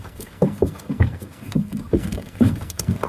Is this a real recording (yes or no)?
no